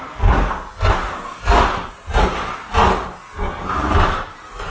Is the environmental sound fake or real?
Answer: real